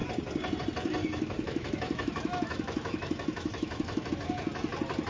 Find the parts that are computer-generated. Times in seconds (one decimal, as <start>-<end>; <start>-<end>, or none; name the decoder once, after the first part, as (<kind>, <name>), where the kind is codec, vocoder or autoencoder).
1.0-4.1 (autoencoder, DAC-VAE)